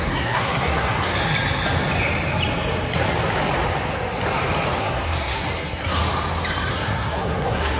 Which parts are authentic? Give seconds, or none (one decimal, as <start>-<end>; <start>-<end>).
1.1-4.8; 6.0-6.7